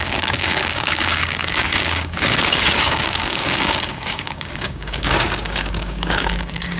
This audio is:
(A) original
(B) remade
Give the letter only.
B